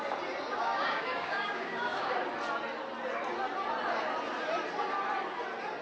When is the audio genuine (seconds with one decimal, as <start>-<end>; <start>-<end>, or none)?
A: 0.0-0.6; 2.1-5.8